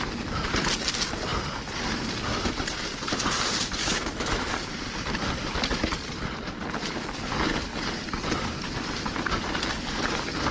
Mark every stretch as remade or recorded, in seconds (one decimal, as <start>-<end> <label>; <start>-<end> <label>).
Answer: 0.0-3.8 recorded; 3.8-4.5 remade; 4.5-10.5 recorded